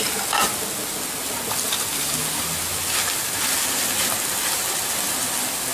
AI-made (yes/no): no